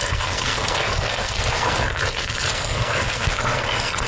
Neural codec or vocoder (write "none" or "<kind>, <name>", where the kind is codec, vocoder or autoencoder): codec, SNAC